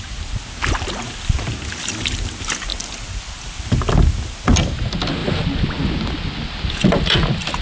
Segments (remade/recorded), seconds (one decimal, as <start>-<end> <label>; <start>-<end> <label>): 0.0-7.6 recorded

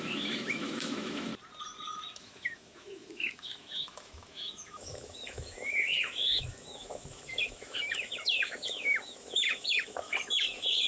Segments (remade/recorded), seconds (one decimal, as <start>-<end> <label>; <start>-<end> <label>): 0.0-1.3 remade; 1.3-2.2 recorded; 2.2-10.9 remade

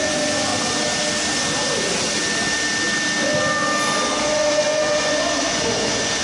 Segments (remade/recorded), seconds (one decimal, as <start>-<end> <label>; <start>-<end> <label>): 0.0-0.5 remade; 0.5-4.2 recorded; 4.2-6.2 remade